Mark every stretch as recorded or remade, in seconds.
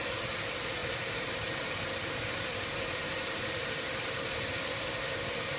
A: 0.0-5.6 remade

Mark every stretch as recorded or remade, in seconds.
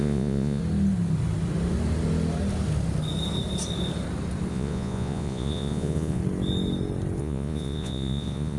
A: 0.0-0.6 remade; 0.6-4.5 recorded; 4.5-6.2 remade; 6.2-7.2 recorded; 7.2-8.6 remade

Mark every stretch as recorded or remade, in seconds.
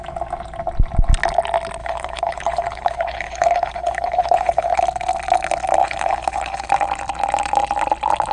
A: 0.0-1.8 recorded; 1.8-4.8 remade; 4.8-5.8 recorded; 5.8-6.7 remade; 6.7-8.3 recorded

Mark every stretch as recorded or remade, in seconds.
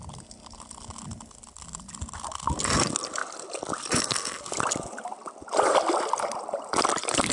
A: 0.0-7.3 recorded